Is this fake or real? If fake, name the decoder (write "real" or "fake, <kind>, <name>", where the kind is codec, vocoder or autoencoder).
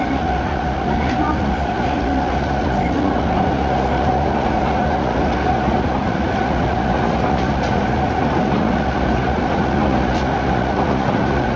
fake, vocoder, Vocos